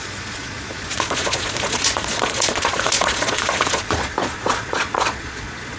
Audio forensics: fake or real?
fake